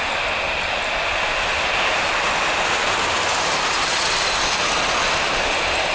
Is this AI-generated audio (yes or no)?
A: no